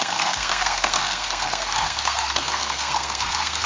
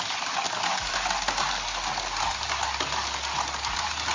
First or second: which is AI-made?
first